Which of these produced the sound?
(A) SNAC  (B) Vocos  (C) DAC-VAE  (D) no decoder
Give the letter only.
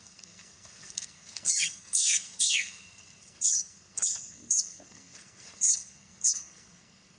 A